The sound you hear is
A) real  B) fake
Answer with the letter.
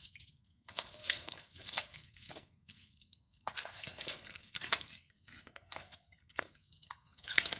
B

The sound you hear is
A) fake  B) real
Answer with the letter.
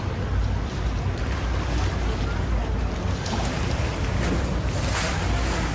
B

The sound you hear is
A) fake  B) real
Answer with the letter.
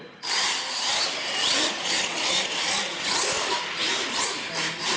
B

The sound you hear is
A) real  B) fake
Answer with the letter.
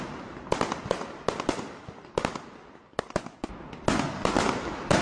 A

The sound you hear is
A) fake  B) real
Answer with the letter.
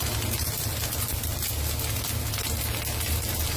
B